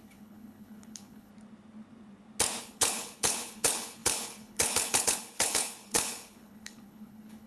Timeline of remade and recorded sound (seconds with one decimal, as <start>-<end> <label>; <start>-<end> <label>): 0.0-1.3 remade; 1.3-2.6 recorded; 2.6-7.5 remade